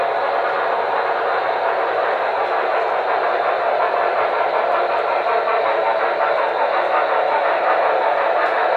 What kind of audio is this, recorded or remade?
recorded